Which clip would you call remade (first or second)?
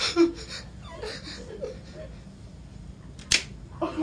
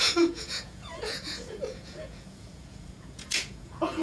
second